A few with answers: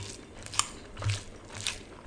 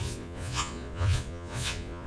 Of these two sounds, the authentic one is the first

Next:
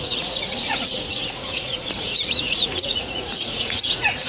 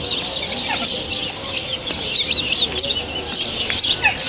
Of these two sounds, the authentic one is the second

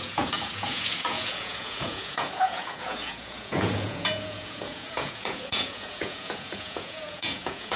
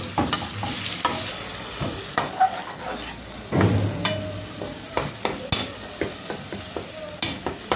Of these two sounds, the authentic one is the second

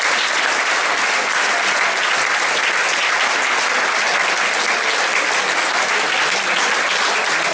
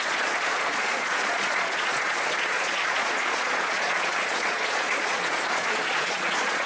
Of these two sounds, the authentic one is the first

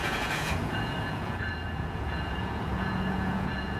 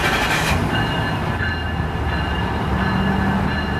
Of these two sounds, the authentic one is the second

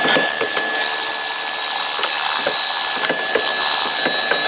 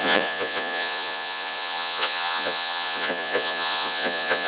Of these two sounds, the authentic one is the first